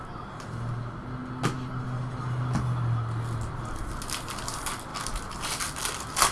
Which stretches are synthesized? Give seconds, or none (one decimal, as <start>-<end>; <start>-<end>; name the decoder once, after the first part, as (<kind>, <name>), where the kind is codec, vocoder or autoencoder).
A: none